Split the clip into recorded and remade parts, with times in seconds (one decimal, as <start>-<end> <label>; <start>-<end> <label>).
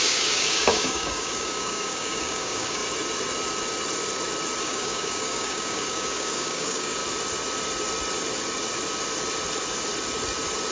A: 0.0-2.8 remade; 2.8-4.6 recorded; 4.6-7.0 remade; 7.0-10.7 recorded